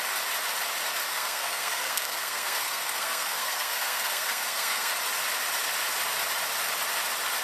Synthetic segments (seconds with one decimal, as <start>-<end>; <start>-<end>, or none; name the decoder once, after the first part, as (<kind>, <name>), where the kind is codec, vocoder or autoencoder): 1.1-4.9 (codec, SNAC)